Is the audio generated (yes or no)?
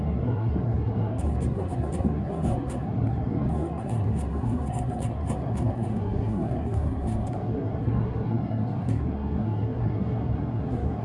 yes